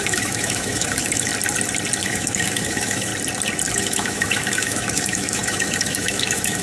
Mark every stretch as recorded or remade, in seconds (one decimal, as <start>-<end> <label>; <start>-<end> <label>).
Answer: 0.0-1.3 remade; 1.3-2.0 recorded; 2.0-3.1 remade; 3.1-3.7 recorded; 3.7-6.6 remade